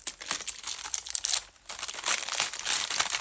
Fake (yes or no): no